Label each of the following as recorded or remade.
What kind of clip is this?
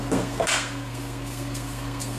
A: remade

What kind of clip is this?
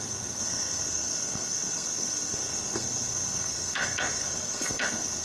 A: remade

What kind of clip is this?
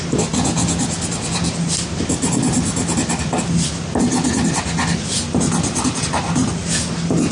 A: recorded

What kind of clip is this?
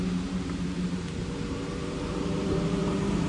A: remade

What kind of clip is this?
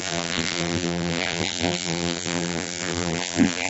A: remade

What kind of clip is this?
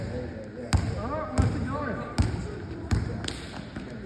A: recorded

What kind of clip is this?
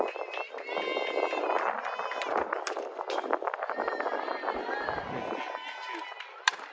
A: recorded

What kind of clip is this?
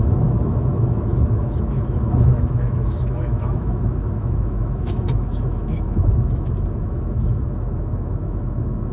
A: remade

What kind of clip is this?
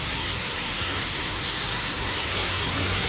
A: remade